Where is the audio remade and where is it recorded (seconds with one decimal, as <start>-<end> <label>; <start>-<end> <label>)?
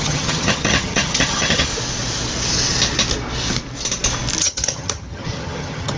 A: 0.0-1.7 remade; 1.7-4.4 recorded; 4.4-6.0 remade